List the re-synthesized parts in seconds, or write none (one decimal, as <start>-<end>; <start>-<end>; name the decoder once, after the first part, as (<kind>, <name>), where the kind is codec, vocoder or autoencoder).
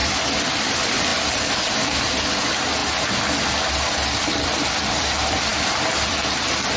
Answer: 0.5-2.8 (vocoder, BigVGAN v2); 3.7-6.8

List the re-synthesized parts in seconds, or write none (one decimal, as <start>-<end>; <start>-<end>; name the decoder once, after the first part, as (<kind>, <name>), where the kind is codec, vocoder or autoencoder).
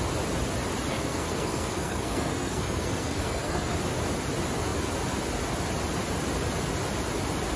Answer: 0.9-3.8 (codec, SNAC)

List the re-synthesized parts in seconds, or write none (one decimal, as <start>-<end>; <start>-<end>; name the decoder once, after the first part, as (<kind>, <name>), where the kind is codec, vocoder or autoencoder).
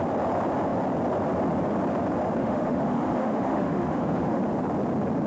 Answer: 2.4-4.4 (autoencoder, DAC-VAE)